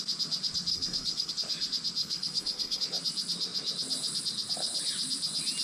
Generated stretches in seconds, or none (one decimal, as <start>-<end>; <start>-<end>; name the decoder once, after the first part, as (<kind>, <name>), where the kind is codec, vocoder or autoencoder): 0.7-1.3 (codec, SNAC); 2.0-2.8